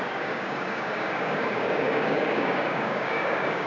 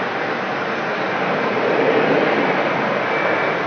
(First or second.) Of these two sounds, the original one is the second